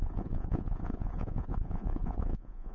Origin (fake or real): fake